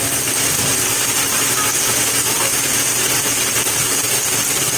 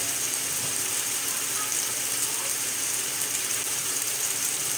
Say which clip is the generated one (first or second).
second